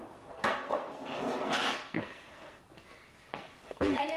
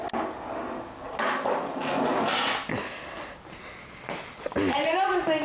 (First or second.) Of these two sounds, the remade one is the first